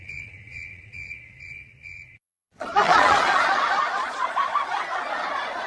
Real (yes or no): no